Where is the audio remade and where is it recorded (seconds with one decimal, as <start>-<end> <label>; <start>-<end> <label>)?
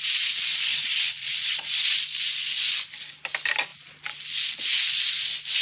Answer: 0.0-0.5 recorded; 0.5-1.8 remade; 1.8-5.6 recorded